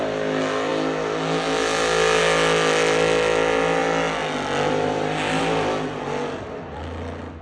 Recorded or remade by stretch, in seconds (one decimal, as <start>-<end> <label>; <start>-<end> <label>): 0.0-7.4 recorded